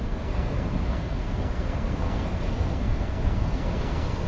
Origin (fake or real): fake